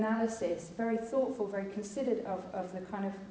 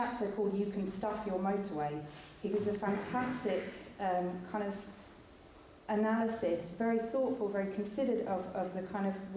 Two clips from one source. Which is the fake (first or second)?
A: first